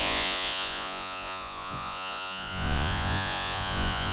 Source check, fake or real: fake